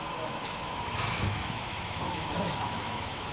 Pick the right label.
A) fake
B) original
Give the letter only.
A